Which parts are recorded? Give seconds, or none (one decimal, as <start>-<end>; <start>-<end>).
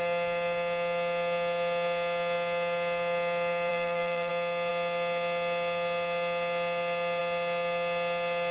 0.0-3.7; 4.3-8.5